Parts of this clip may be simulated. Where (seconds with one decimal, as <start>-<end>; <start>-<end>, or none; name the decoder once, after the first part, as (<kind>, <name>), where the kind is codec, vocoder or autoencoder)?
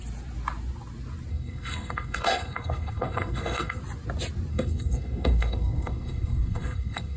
1.3-3.8 (codec, SNAC); 4.5-7.2